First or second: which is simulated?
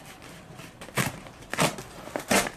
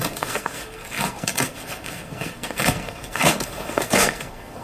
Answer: second